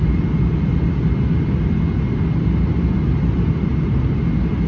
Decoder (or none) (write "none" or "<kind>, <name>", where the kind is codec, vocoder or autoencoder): none